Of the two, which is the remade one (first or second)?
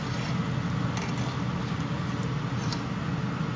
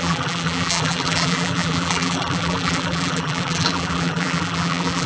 second